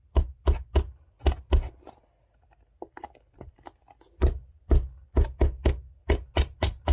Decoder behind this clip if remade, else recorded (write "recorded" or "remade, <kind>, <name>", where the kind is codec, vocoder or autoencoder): recorded